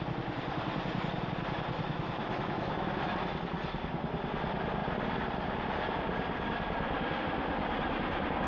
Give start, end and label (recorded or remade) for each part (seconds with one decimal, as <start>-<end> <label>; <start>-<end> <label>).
0.0-2.2 recorded; 2.2-3.1 remade; 3.1-8.5 recorded